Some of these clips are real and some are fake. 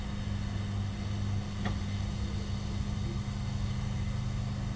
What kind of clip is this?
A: real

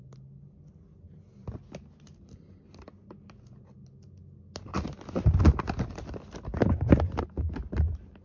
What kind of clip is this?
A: real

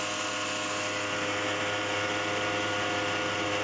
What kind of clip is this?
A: real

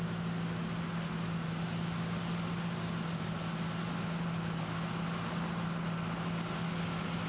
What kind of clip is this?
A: real